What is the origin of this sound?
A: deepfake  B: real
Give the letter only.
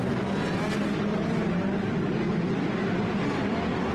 B